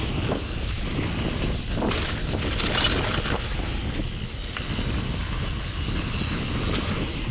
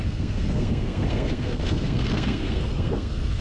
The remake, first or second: second